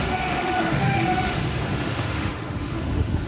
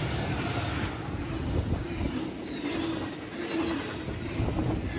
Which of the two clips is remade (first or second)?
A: first